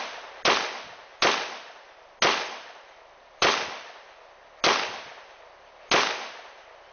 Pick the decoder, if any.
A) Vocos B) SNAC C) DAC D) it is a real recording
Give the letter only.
D